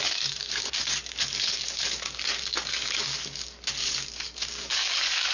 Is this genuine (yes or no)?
no